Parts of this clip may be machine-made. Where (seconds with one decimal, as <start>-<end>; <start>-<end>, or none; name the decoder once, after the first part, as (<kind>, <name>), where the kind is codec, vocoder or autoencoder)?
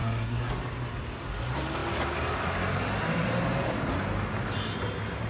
0.0-0.5 (codec, SNAC)